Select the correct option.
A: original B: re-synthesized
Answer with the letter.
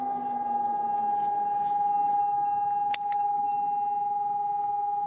A